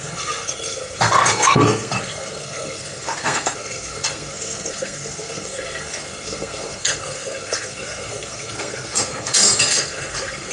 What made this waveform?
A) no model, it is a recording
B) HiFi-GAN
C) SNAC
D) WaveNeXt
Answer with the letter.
C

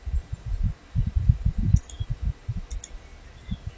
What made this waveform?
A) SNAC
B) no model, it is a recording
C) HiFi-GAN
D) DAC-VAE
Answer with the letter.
B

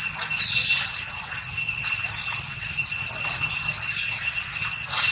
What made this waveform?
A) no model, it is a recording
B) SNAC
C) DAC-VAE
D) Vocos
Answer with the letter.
A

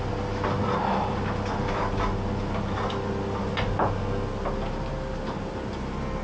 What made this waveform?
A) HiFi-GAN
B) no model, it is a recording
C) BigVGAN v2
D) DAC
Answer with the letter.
B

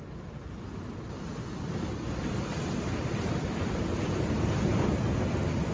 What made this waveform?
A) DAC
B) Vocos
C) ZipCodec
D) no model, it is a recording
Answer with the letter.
D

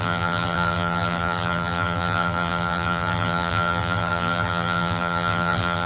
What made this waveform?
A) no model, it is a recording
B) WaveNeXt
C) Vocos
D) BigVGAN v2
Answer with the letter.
D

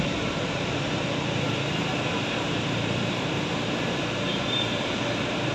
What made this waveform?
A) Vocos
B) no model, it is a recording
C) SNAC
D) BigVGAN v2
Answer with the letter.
D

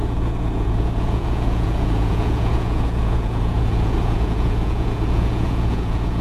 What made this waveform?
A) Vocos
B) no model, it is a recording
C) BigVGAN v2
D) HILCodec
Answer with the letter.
A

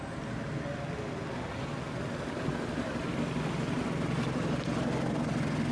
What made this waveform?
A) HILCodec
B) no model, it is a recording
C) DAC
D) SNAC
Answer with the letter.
B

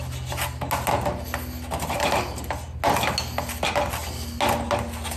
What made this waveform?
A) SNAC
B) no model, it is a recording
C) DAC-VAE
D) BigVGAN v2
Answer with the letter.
B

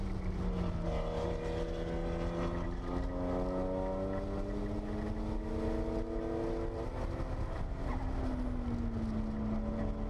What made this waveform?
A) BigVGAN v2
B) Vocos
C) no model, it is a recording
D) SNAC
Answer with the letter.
C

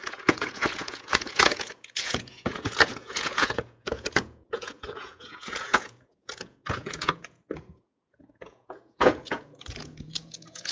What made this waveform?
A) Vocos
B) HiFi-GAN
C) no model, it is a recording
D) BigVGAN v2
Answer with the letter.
A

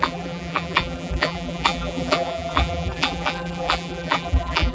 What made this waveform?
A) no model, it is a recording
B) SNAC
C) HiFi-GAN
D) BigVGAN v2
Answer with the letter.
D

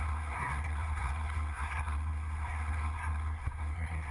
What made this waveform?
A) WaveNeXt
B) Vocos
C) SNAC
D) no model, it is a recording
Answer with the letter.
C